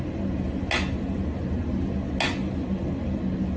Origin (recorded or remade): recorded